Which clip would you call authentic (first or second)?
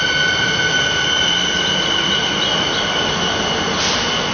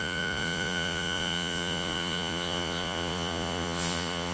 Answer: first